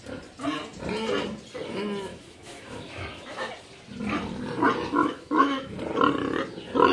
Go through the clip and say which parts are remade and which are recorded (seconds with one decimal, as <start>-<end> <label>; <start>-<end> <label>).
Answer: 0.0-2.1 recorded; 2.1-3.5 remade; 3.5-5.0 recorded; 5.0-5.7 remade; 5.7-6.9 recorded